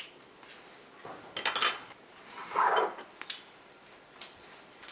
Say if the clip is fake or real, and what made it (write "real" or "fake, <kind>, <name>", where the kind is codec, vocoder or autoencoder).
real